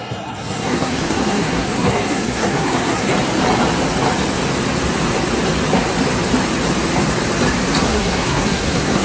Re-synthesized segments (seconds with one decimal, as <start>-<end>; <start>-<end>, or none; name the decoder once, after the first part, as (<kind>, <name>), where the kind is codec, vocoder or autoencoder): 0.0-3.1 (codec, SNAC); 7.8-9.0